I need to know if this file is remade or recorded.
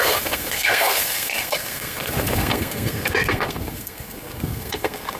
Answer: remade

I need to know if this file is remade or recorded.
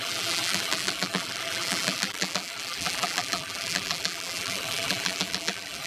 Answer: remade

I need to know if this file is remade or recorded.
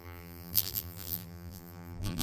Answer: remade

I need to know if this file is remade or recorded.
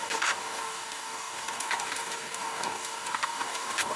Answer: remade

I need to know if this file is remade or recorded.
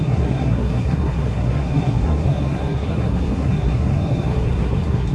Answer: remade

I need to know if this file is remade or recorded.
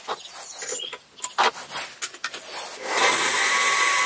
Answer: recorded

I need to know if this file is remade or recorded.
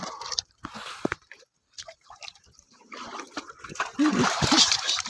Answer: recorded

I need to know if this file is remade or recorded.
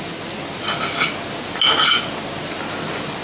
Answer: recorded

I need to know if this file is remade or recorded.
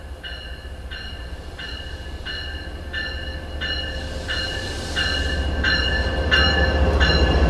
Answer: recorded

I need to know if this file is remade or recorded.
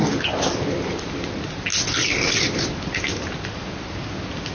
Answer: recorded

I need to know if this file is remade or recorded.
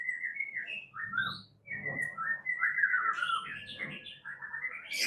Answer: recorded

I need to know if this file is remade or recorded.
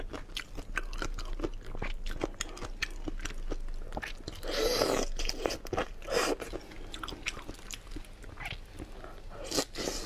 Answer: recorded